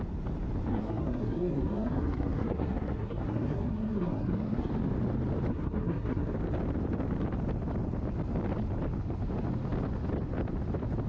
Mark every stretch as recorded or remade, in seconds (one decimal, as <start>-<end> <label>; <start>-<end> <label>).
0.0-0.7 recorded; 0.7-4.7 remade; 4.7-5.5 recorded; 5.5-6.3 remade; 6.3-11.1 recorded